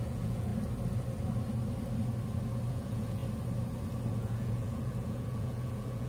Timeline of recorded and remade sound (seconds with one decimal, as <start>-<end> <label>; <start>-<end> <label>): 0.0-0.5 remade; 0.5-2.7 recorded; 2.7-3.2 remade; 3.2-4.1 recorded; 4.1-6.1 remade